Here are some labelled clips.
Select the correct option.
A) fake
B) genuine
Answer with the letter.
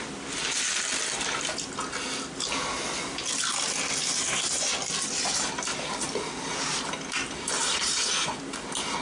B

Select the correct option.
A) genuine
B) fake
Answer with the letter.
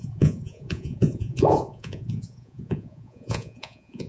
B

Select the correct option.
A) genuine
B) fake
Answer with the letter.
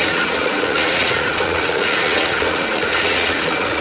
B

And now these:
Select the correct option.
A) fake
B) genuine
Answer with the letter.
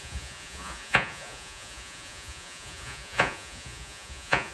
A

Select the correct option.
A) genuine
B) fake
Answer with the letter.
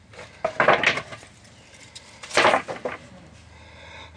A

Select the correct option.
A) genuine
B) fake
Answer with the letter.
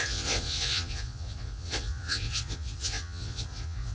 B